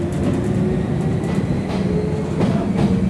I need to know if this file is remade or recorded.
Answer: recorded